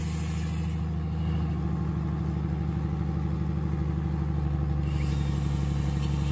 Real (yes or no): yes